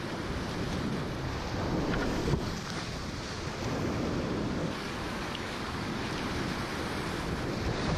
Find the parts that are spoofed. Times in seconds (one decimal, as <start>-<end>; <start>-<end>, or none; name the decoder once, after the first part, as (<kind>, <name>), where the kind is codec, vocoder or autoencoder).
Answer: 2.2-2.8 (codec, DAC); 4.6-6.0